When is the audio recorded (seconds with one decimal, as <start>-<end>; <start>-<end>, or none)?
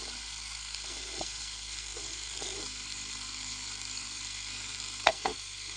none